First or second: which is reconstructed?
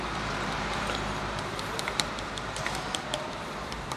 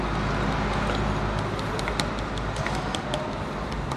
first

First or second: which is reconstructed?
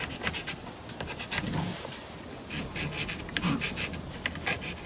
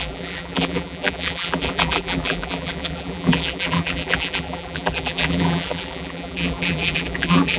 second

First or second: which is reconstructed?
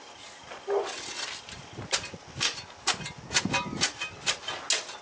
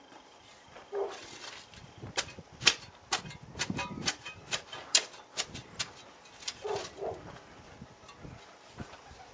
second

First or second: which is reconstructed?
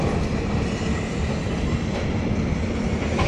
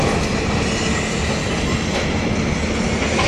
first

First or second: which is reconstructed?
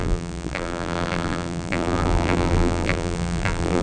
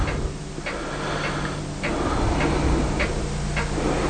first